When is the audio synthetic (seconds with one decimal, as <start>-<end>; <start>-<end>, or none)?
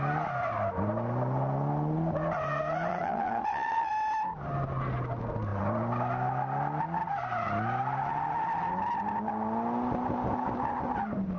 2.9-3.9